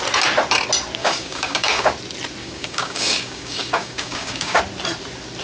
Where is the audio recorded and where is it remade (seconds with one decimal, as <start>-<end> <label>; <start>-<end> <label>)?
0.0-1.0 recorded; 1.0-1.9 remade; 1.9-2.4 recorded; 2.4-4.6 remade; 4.6-5.4 recorded